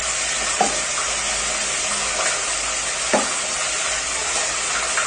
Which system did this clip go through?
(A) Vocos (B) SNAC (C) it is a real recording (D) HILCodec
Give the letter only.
C